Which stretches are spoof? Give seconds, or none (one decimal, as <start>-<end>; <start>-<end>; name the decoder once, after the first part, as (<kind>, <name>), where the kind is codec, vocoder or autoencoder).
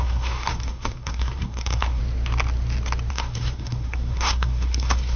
0.0-2.0 (codec, SNAC); 3.1-5.2